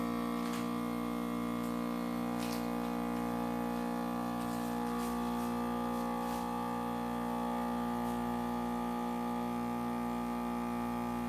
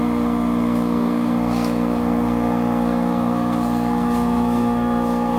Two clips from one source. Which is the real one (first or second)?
first